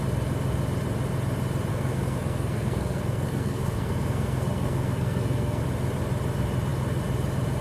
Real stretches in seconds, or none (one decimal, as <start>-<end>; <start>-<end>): 0.0-1.7; 5.6-7.6